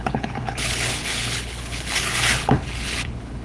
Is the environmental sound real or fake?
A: fake